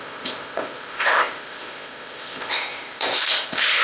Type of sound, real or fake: fake